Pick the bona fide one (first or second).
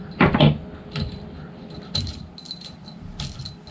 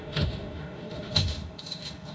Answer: first